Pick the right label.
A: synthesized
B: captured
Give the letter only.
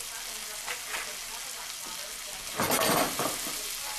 B